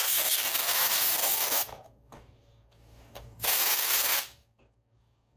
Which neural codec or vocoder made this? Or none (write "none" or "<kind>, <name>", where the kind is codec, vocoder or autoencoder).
codec, DAC